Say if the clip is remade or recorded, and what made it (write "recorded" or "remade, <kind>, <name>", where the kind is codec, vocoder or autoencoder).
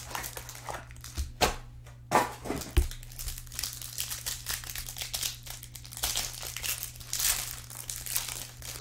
recorded